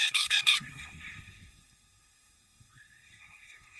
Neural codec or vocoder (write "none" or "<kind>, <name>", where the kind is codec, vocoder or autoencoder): codec, SNAC